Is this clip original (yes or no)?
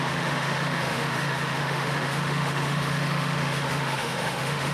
no